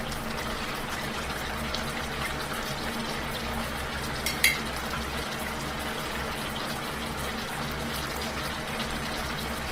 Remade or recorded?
recorded